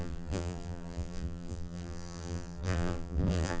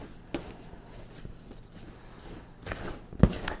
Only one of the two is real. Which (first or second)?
second